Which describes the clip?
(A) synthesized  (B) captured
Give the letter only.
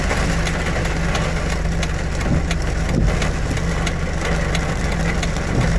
B